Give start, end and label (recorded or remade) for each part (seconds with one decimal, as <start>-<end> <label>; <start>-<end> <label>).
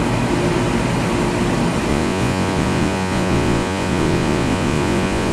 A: 0.0-1.9 recorded; 1.9-5.3 remade